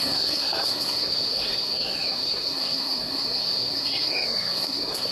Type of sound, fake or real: fake